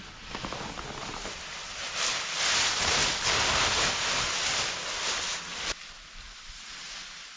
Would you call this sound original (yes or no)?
yes